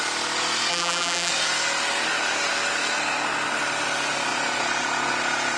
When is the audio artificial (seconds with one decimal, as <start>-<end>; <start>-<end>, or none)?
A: 0.7-1.3